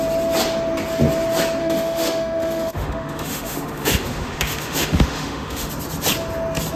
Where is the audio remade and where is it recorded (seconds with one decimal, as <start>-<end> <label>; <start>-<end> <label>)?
0.0-1.6 recorded; 1.6-5.7 remade; 5.7-6.8 recorded